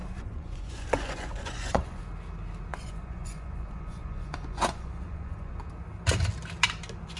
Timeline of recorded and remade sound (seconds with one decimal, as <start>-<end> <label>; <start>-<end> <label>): 0.0-2.0 remade; 2.0-2.7 recorded; 2.7-5.5 remade; 5.5-7.2 recorded